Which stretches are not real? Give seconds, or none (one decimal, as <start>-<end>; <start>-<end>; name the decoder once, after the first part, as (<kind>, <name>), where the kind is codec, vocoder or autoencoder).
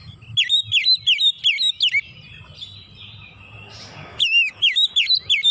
4.1-4.9 (autoencoder, DAC-VAE)